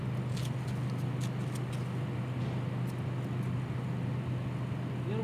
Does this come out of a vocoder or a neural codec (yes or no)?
no